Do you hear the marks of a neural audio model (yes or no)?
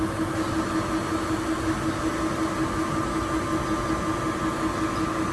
no